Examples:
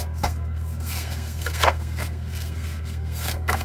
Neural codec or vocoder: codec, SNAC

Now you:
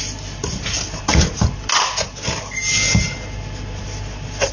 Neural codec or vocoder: none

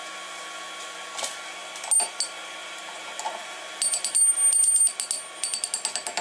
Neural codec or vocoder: none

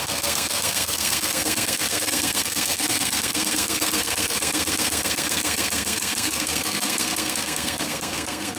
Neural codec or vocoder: codec, SNAC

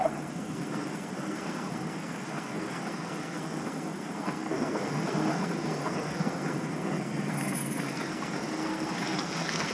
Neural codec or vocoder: codec, SNAC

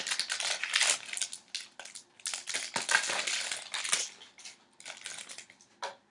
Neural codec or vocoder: none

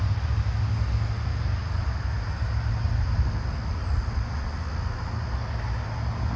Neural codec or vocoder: none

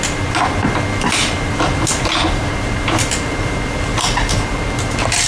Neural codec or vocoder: none